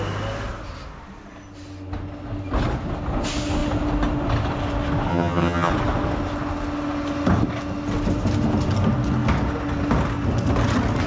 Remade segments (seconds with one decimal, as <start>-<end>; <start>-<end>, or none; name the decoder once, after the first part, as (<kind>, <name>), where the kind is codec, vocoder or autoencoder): 5.1-5.7 (vocoder, HiFi-GAN)